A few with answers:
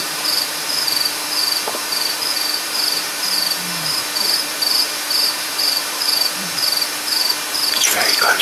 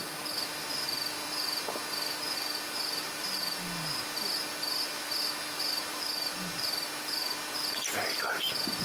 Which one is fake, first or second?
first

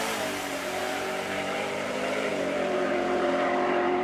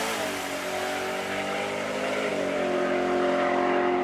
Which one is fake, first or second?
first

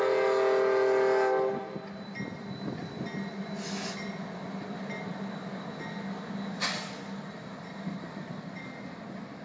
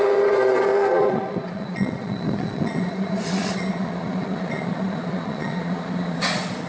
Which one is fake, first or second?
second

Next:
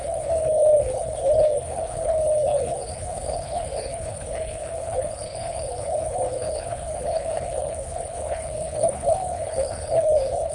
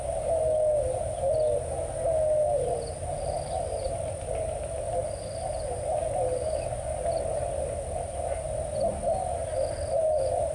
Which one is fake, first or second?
first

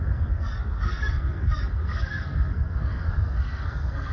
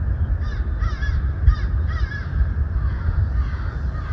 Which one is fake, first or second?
first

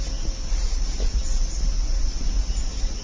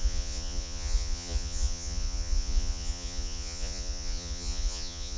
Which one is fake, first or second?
second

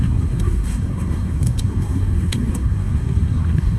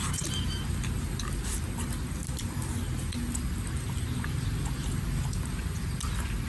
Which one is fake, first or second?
first